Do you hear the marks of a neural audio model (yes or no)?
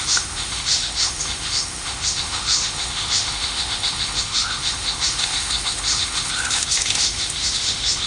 yes